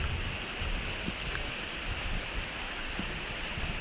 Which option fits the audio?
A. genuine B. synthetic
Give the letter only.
A